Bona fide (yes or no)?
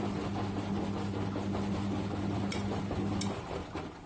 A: yes